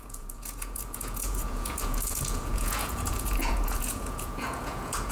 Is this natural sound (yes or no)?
no